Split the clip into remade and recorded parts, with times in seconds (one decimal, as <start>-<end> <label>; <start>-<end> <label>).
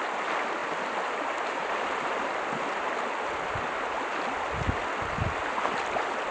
0.0-6.3 recorded